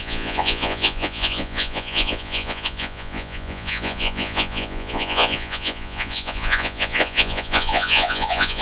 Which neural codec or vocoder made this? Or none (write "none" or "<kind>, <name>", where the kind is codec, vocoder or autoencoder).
vocoder, Vocos